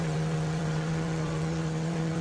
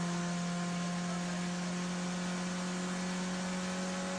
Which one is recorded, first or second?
second